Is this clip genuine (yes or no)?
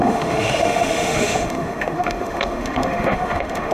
no